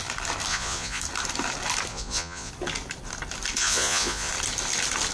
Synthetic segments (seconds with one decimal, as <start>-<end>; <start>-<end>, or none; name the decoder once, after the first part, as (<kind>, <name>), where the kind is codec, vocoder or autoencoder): 0.5-1.0 (vocoder, Vocos); 1.9-2.5; 3.6-4.3

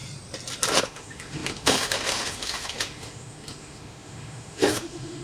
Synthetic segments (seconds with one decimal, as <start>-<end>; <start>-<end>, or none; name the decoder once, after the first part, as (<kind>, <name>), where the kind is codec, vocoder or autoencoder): 0.8-5.2 (autoencoder, DAC-VAE)

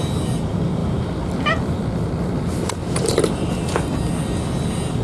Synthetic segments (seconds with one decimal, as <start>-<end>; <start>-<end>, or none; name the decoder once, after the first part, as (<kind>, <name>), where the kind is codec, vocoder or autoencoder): none

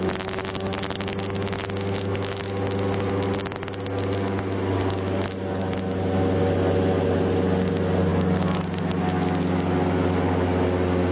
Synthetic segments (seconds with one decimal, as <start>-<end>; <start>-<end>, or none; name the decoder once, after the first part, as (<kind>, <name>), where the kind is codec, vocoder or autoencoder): none

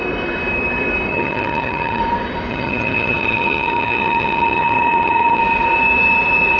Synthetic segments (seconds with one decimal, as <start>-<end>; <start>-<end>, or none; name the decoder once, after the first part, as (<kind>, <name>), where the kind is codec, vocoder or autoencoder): 1.1-2.0 (vocoder, HiFi-GAN); 2.5-5.4

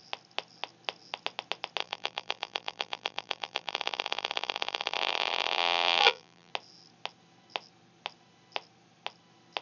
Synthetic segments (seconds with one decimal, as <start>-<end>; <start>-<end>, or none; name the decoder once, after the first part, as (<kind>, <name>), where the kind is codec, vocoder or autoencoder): 1.8-6.5 (vocoder, BigVGAN v2)